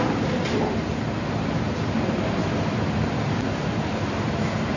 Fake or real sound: real